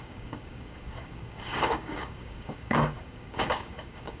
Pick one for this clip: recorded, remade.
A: remade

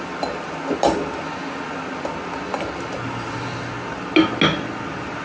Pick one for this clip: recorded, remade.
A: recorded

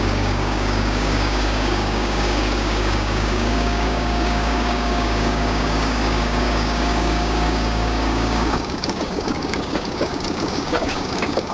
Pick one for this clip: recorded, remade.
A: remade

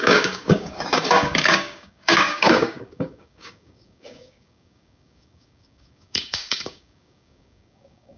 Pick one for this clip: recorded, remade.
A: remade